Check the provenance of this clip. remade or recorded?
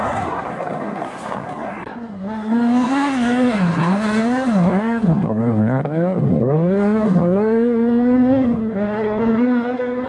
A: remade